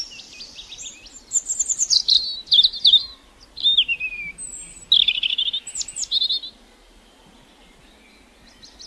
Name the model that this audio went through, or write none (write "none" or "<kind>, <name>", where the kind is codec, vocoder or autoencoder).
none